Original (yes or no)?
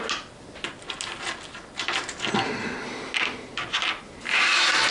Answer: yes